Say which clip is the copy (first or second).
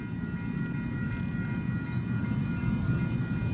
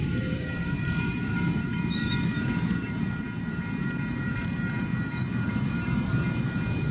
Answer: second